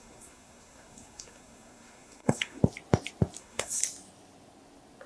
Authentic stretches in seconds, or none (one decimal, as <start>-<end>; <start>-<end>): 2.6-3.4; 3.8-5.1